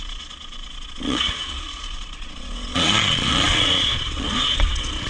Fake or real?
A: fake